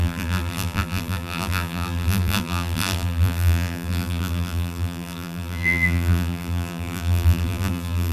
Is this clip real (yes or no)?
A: no